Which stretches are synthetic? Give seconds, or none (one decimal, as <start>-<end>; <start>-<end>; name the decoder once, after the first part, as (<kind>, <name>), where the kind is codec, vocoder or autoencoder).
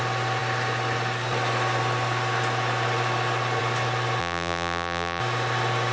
4.2-5.2 (vocoder, BigVGAN v2)